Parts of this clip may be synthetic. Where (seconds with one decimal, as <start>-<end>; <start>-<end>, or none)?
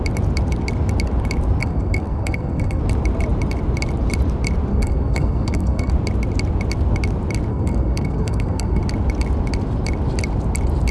1.6-2.8; 4.7-5.9; 7.5-8.8